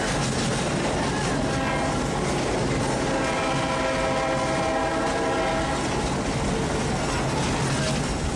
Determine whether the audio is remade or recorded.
recorded